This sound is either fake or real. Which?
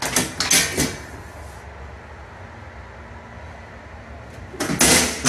real